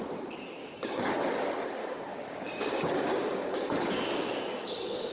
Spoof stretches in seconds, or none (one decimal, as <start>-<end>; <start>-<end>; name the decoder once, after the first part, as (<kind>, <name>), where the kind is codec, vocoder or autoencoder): 0.6-1.1 (codec, DAC); 1.8-5.1